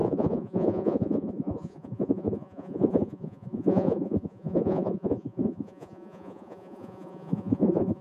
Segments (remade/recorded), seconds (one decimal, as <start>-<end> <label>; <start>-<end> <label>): 0.0-8.0 remade